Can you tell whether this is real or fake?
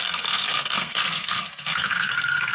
fake